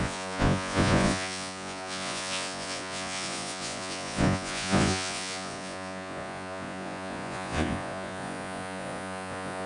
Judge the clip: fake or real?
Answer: fake